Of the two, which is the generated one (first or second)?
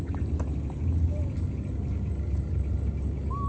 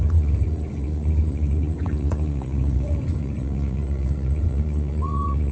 second